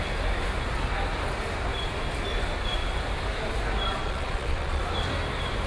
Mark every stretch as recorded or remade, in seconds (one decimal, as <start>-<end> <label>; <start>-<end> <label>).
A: 0.0-4.0 recorded; 4.0-4.8 remade; 4.8-5.7 recorded